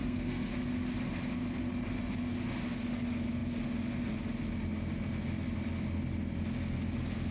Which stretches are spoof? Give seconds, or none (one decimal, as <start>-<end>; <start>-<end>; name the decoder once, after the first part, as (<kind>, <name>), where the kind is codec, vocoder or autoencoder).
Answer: 0.0-0.5 (codec, SNAC)